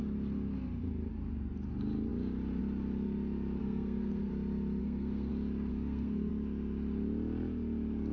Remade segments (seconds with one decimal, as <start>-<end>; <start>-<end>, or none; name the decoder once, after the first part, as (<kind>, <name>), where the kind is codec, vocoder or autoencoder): 3.6-4.3 (codec, SNAC); 4.8-5.3; 5.7-6.3